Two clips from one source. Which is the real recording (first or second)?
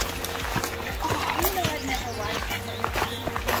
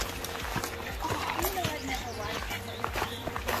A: first